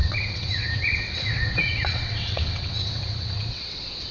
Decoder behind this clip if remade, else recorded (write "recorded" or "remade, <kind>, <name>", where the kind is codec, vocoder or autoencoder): remade, vocoder, WaveNeXt